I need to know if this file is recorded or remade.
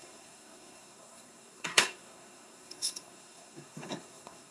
remade